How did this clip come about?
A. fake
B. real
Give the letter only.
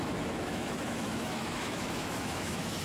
A